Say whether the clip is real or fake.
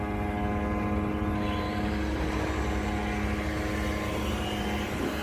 real